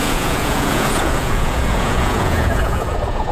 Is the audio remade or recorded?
remade